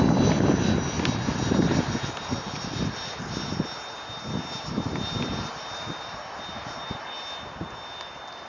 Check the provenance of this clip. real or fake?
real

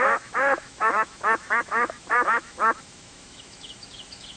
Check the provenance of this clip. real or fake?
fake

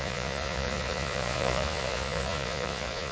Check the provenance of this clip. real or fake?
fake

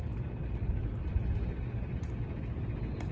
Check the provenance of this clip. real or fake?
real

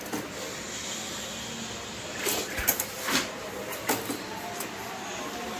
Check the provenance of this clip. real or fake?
real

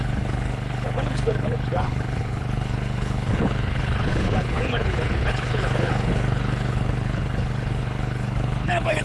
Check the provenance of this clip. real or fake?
fake